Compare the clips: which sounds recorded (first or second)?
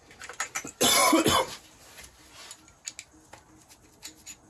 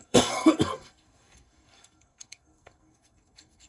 first